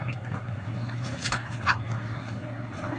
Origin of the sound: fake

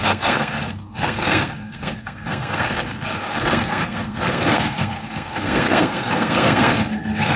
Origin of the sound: fake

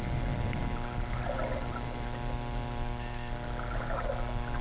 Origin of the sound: real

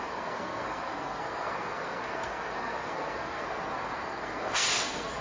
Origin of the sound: fake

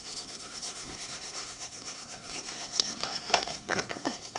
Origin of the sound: fake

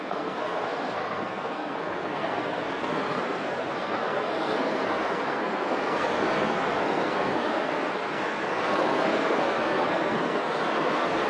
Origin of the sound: fake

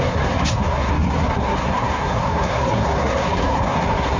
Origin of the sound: fake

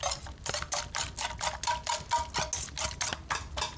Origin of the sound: real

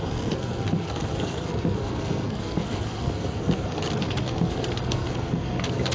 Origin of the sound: fake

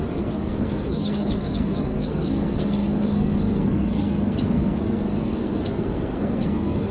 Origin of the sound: fake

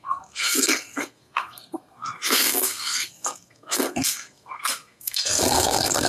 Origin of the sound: fake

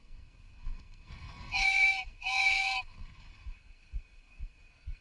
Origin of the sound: fake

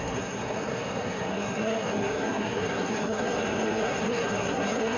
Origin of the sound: fake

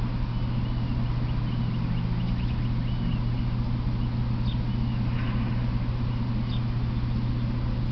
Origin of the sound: real